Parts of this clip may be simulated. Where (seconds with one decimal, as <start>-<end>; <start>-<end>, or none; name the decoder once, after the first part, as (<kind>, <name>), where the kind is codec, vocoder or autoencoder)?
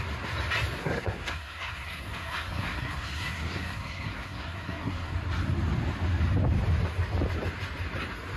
0.8-5.1 (codec, SNAC)